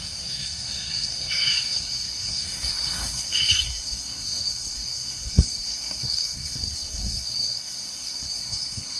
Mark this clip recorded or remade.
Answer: remade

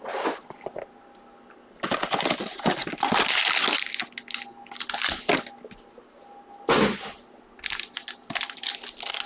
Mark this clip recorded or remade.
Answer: recorded